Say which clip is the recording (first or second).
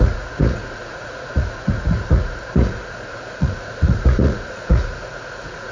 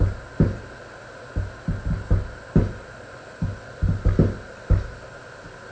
second